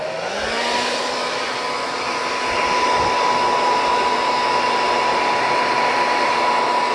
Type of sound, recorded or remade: recorded